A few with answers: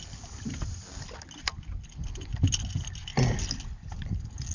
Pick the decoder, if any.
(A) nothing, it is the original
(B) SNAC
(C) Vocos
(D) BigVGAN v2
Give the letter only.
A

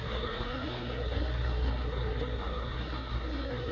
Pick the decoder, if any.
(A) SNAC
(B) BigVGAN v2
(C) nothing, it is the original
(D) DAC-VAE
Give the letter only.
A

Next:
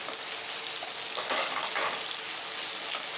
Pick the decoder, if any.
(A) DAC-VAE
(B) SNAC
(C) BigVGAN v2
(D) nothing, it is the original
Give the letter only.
D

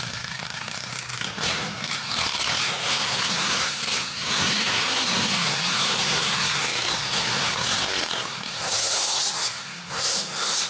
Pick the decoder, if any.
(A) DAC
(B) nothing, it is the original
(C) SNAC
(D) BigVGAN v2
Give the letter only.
C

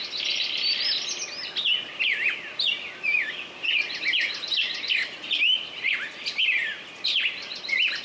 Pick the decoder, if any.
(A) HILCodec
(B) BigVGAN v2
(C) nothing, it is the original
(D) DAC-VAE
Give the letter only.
C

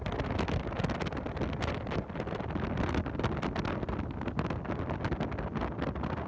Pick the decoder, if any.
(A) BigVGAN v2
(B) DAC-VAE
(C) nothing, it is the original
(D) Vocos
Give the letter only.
C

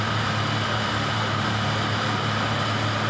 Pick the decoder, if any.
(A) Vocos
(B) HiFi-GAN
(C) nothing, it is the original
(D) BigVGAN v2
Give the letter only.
D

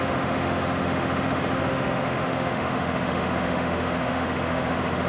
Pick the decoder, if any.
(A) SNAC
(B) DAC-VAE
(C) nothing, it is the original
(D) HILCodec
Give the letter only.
B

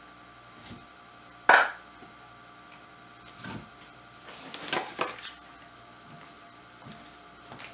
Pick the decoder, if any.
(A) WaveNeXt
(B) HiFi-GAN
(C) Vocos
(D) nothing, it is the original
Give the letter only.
D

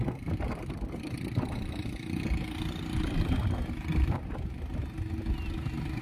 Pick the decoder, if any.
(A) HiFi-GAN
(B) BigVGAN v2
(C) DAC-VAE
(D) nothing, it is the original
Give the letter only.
D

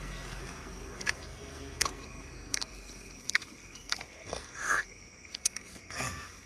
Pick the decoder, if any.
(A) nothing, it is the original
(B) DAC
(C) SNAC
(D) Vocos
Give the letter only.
C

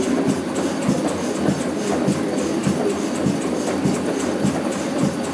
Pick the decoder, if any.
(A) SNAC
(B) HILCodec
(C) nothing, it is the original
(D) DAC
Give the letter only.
C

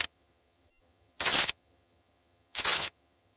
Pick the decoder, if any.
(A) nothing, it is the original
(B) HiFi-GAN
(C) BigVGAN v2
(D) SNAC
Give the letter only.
B